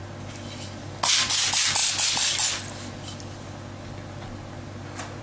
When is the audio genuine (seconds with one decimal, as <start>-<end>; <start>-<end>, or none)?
0.0-5.2